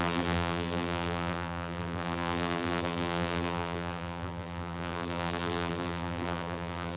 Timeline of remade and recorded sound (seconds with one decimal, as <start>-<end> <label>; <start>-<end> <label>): 0.0-7.0 remade